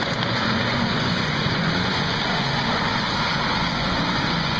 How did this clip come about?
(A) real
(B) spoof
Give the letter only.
B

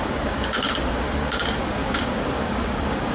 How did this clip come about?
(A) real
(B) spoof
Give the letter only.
B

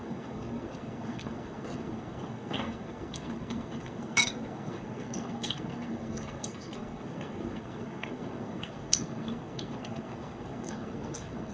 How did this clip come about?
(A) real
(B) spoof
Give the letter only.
B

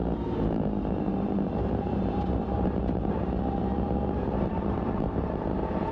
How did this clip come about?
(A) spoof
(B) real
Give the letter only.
A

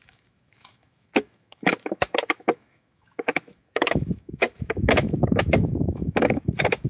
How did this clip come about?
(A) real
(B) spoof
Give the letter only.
B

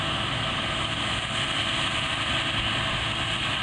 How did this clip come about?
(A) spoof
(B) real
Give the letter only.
B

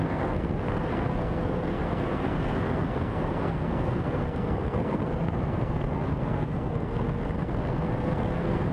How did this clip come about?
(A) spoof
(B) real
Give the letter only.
A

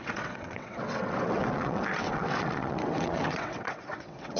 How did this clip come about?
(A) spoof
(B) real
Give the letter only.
A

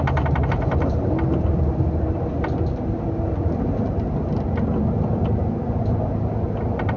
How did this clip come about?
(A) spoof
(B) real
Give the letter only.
B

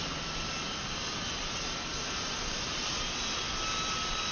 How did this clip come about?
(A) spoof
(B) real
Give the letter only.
B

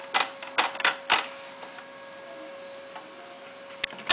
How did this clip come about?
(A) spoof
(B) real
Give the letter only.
B